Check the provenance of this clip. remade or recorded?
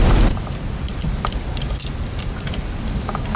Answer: recorded